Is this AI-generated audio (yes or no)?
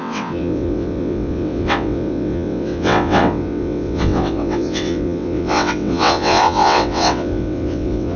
yes